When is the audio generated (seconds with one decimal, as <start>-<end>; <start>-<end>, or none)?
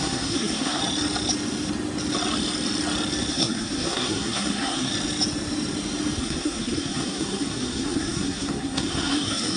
0.0-0.8; 3.3-4.9; 6.2-9.6